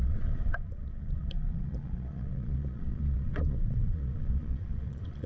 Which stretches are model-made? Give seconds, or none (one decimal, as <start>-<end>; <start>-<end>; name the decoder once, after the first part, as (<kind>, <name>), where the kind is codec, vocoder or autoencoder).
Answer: 0.0-5.3 (vocoder, Vocos)